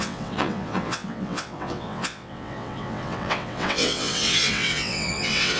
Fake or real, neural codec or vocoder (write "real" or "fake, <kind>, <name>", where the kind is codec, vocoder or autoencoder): fake, vocoder, WaveNeXt